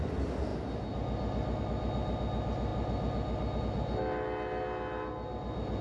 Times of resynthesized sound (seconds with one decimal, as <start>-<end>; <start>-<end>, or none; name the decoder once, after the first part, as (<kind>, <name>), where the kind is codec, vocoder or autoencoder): none